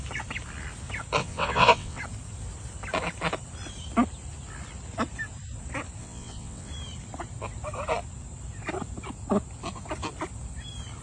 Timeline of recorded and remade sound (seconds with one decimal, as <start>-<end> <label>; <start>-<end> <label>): 0.0-1.2 recorded; 1.2-2.0 remade; 2.0-6.0 recorded; 6.0-6.7 remade; 6.7-11.0 recorded